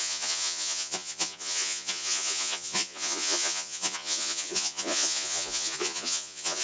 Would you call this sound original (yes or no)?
no